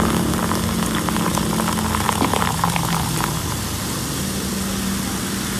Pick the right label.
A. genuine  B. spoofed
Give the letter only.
A